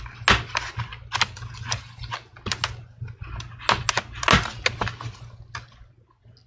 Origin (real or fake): real